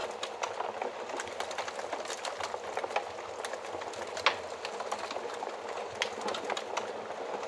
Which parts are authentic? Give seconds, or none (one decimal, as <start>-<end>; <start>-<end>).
0.0-7.5